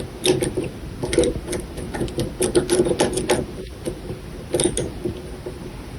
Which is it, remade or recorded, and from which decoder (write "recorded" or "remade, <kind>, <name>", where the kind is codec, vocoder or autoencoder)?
recorded